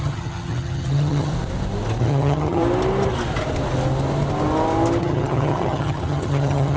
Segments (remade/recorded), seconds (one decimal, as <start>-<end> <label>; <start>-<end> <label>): 0.0-1.3 remade; 1.3-2.0 recorded; 2.0-2.6 remade; 2.6-5.0 recorded; 5.0-6.8 remade